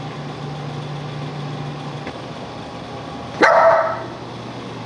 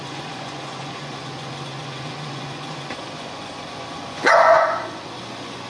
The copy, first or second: second